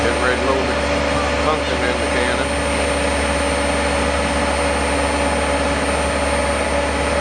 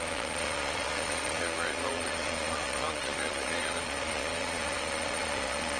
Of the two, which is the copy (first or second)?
second